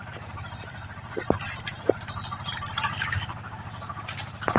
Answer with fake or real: fake